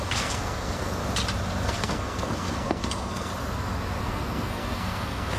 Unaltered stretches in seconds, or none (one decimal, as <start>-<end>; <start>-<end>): 1.0-1.6; 3.3-4.0